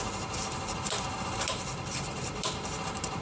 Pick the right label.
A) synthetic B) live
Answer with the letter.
A